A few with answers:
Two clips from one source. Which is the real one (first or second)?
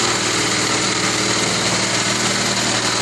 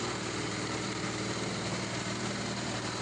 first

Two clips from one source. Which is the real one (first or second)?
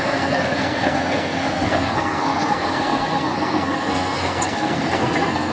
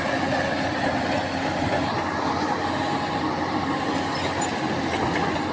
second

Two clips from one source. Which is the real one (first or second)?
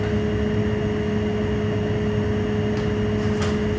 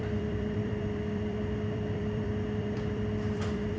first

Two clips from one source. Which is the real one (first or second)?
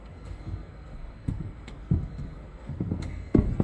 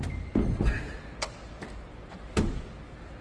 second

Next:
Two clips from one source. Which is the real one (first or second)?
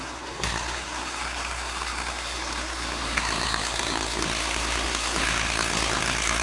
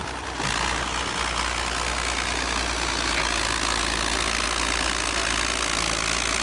second